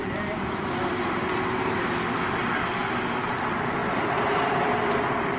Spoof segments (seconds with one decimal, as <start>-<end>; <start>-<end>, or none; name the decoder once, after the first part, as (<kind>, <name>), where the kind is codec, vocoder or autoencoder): 3.8-4.8 (vocoder, BigVGAN v2)